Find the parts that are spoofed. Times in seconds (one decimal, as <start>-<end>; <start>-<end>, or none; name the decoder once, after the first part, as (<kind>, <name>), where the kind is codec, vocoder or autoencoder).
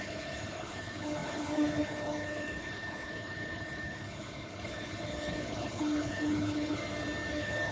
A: 0.0-6.8 (codec, HILCodec); 7.3-7.7